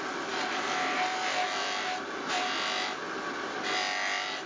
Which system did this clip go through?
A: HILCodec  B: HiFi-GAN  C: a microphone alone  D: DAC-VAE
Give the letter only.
C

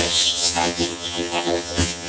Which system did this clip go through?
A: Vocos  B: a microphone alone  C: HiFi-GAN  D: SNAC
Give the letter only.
C